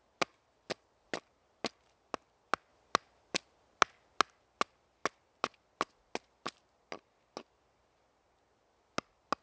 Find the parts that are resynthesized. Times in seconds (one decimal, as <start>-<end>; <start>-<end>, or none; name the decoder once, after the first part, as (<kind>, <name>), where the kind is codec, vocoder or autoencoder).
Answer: none